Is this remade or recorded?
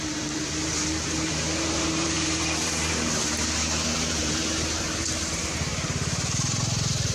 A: remade